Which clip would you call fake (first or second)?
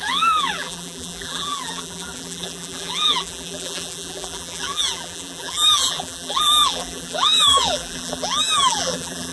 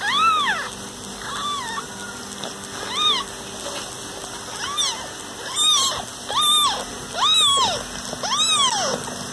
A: first